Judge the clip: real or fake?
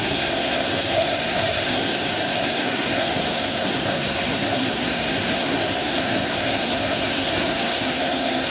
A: fake